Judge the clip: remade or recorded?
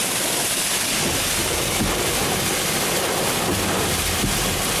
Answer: recorded